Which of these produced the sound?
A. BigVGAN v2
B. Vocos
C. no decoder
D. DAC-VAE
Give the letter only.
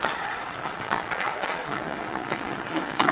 B